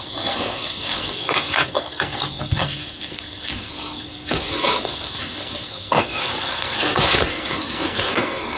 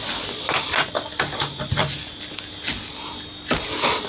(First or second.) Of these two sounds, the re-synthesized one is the first